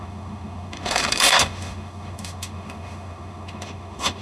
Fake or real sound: fake